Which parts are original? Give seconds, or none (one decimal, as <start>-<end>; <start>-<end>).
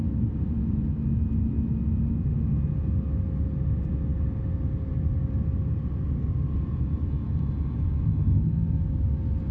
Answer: 0.9-9.5